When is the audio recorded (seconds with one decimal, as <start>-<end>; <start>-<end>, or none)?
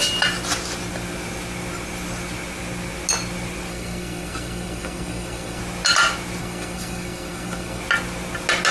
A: 0.0-3.7; 5.6-6.4; 7.8-8.7